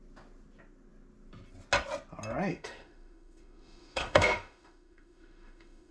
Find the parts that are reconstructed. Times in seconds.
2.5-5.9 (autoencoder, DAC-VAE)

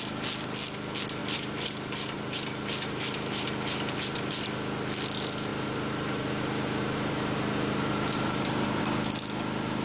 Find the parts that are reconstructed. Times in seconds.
1.2-4.3 (vocoder, BigVGAN v2); 5.5-8.8

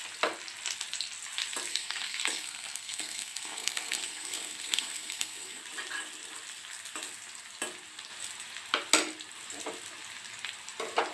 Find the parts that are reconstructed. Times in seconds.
1.7-5.6 (codec, SNAC)

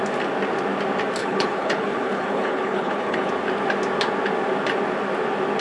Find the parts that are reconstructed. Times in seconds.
1.2-3.3 (codec, HILCodec)

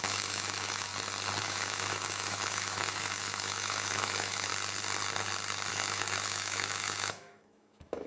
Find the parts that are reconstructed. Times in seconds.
0.0-0.9 (autoencoder, DAC-VAE); 1.4-4.5; 5.7-8.1

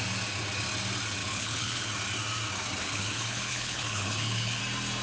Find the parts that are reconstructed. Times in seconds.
1.2-1.9 (codec, HILCodec); 2.8-4.6